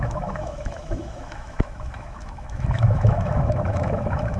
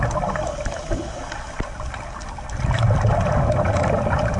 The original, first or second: second